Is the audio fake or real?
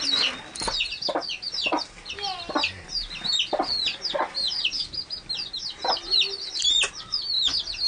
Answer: real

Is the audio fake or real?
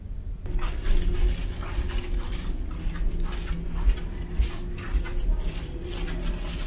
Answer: real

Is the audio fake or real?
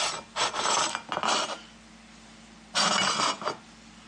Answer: real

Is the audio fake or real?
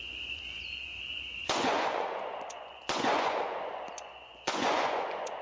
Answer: fake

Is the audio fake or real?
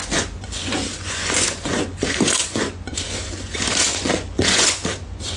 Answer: fake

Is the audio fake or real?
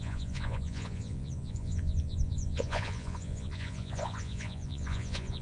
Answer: fake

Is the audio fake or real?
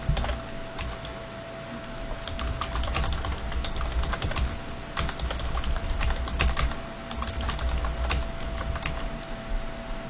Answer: real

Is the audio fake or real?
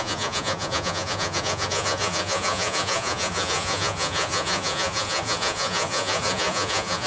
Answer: fake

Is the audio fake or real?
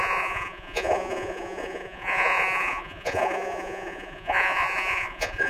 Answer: fake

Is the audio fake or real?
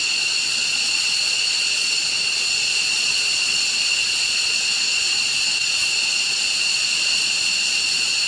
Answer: fake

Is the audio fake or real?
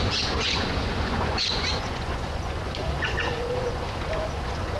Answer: fake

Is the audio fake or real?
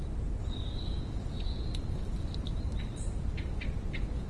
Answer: real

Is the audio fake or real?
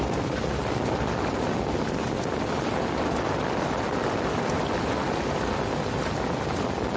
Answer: real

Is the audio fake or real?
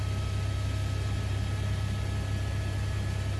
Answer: real